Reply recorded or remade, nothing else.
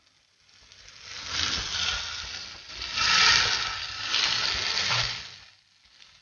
recorded